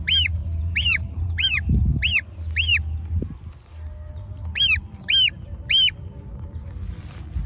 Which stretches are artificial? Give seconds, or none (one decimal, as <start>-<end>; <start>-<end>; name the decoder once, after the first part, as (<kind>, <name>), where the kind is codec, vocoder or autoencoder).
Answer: 0.4-2.1 (vocoder, BigVGAN v2)